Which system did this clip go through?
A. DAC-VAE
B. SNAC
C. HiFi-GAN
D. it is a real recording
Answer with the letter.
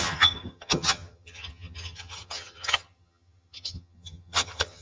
C